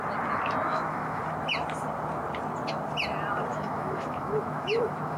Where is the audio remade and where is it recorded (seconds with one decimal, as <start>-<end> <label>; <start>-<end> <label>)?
0.0-0.7 recorded; 0.7-1.2 remade; 1.2-3.5 recorded; 3.5-5.2 remade